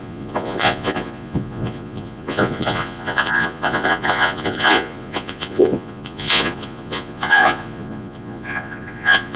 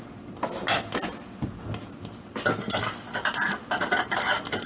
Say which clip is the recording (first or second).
second